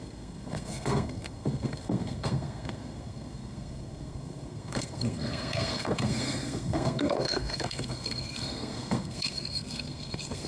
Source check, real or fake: fake